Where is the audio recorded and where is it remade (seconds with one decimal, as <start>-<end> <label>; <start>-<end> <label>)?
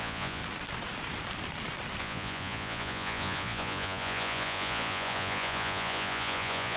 0.0-0.4 remade; 0.4-2.0 recorded; 2.0-6.8 remade